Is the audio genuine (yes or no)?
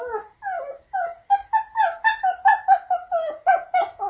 yes